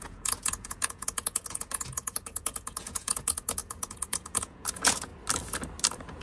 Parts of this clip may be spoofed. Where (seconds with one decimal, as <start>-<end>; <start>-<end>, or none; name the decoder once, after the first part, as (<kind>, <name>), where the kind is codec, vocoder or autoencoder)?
0.0-5.1 (vocoder, Vocos)